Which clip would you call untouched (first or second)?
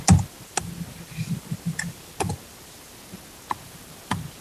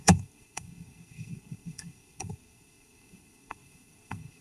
first